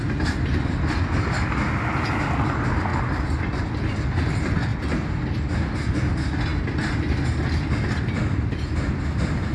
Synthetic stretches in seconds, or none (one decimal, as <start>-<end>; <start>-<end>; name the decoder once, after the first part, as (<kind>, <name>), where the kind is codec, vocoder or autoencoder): none